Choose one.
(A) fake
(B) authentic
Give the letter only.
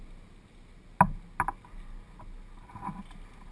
B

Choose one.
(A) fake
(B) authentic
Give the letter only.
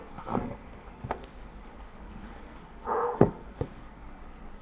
A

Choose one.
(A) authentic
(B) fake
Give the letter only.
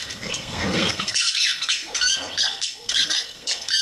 B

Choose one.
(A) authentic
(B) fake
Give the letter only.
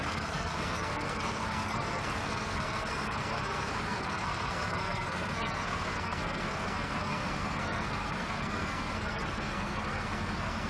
B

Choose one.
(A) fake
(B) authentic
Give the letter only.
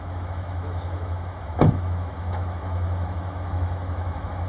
A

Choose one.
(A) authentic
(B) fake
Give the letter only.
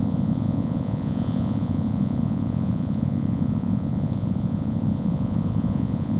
B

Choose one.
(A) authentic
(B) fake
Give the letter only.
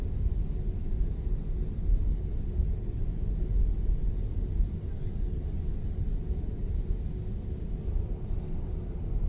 A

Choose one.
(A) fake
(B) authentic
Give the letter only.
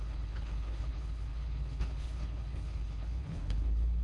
A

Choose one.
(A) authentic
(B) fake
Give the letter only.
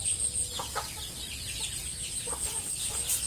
A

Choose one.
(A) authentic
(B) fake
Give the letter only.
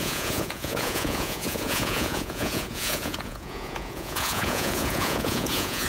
B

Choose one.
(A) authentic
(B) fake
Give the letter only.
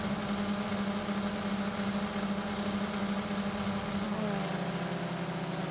A